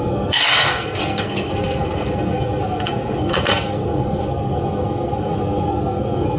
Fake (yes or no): yes